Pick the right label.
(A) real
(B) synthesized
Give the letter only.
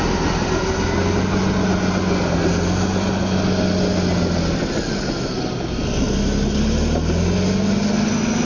A